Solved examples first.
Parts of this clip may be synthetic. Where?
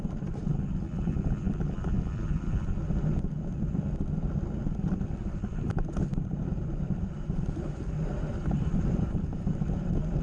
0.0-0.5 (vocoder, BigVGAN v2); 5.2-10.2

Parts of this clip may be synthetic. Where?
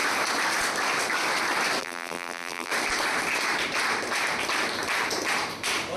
1.8-2.7 (vocoder, BigVGAN v2)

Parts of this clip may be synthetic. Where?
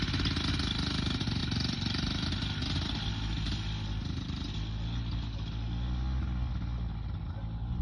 1.4-3.1 (vocoder, BigVGAN v2)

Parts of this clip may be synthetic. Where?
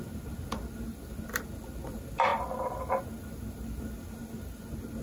none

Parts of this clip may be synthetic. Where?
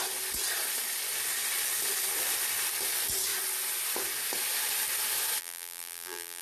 5.4-6.4 (vocoder, BigVGAN v2)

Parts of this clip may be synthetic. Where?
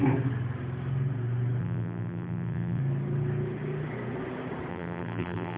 1.6-2.8 (vocoder, BigVGAN v2); 4.7-5.6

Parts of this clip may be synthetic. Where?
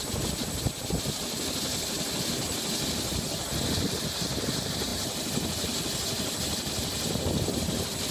none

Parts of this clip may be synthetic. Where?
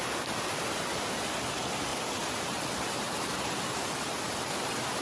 1.9-5.0 (vocoder, BigVGAN v2)